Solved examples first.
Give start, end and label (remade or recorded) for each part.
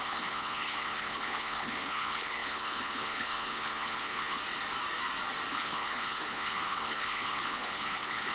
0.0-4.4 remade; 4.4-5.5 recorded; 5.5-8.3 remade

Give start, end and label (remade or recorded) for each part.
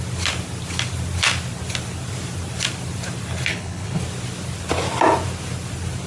0.0-3.5 recorded; 3.5-4.0 remade; 4.0-6.1 recorded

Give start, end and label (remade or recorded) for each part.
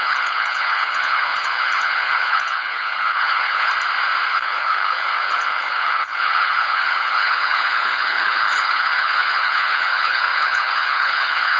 0.0-3.7 remade; 3.7-4.3 recorded; 4.3-11.6 remade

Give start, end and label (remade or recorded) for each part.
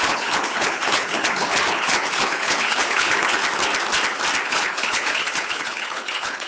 0.0-3.4 remade; 3.4-4.5 recorded; 4.5-6.5 remade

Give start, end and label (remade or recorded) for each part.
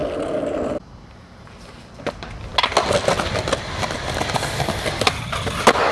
0.0-5.9 recorded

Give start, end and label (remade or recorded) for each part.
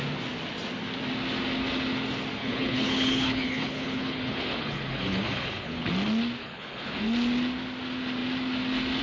0.0-2.4 recorded; 2.4-5.9 remade; 5.9-6.4 recorded; 6.4-7.0 remade; 7.0-9.0 recorded